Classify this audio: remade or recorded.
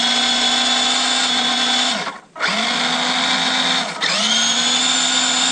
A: recorded